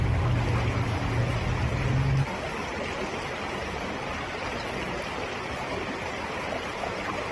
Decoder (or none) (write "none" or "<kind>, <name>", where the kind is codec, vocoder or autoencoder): none